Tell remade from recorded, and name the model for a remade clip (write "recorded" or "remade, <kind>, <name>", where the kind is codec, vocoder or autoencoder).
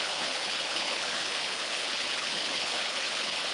remade, codec, HILCodec